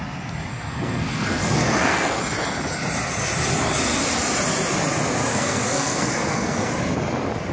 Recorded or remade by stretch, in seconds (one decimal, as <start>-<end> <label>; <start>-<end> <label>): 0.0-0.5 recorded; 0.5-2.2 remade; 2.2-5.3 recorded; 5.3-6.7 remade; 6.7-7.5 recorded